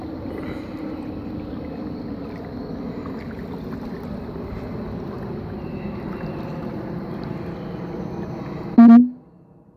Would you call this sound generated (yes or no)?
no